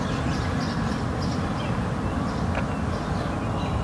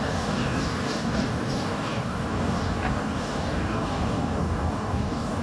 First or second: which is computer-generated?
second